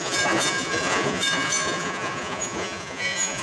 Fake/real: fake